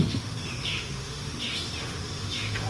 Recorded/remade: remade